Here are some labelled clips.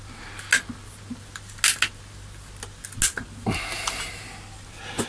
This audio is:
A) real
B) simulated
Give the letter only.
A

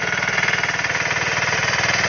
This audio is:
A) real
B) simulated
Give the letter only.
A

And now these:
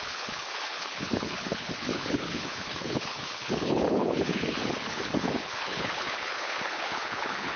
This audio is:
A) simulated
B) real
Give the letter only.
A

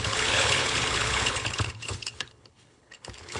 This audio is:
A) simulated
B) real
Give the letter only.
A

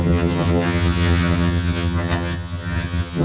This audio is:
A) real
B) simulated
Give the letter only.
B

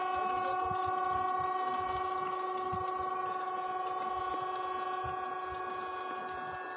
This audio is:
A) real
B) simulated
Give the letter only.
A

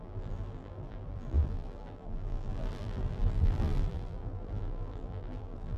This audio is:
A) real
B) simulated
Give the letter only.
B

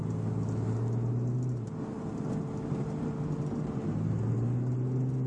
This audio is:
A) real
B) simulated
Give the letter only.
A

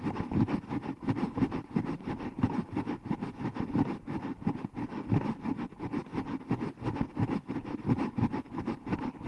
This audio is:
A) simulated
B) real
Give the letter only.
B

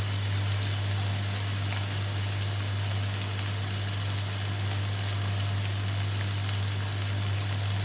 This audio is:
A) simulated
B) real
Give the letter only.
B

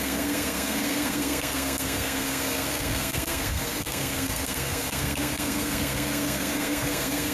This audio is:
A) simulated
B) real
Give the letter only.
A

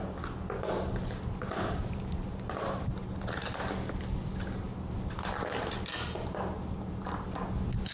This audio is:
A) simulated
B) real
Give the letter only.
B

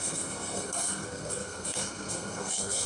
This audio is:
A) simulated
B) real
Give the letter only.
A